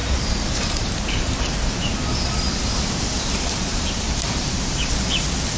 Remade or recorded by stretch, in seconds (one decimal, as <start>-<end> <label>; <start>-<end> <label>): 0.0-2.0 remade; 2.0-3.7 recorded; 3.7-4.9 remade; 4.9-5.6 recorded